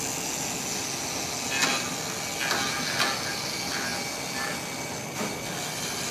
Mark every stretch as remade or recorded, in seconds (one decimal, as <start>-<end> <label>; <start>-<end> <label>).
0.0-6.1 recorded